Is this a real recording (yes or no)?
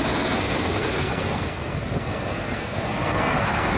no